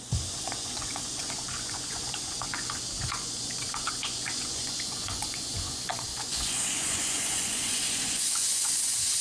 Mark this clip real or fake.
fake